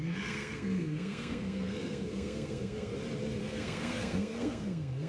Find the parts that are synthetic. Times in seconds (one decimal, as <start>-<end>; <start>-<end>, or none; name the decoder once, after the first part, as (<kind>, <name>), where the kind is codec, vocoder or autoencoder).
0.0-2.9 (codec, SNAC); 3.4-5.1